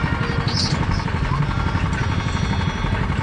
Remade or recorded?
recorded